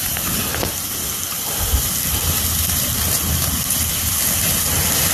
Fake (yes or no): no